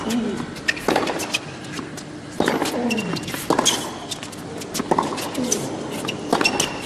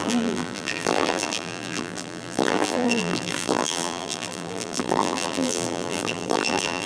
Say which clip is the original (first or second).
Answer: first